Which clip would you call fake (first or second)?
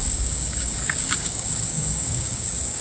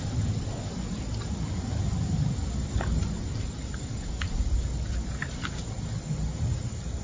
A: first